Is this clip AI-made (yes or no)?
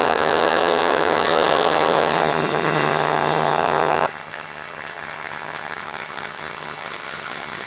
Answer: yes